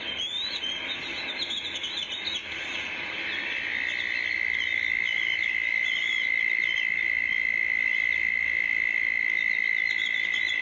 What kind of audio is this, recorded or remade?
recorded